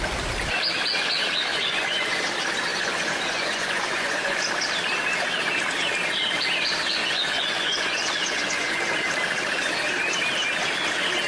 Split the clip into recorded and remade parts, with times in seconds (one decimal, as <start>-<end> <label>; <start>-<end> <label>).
0.0-1.5 recorded; 1.5-2.2 remade; 2.2-2.7 recorded; 2.7-4.4 remade; 4.4-7.0 recorded; 7.0-8.8 remade; 8.8-11.3 recorded